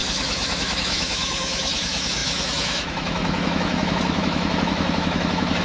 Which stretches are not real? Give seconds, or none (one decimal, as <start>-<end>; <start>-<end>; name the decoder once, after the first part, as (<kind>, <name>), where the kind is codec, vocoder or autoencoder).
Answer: 0.0-5.6 (autoencoder, DAC-VAE)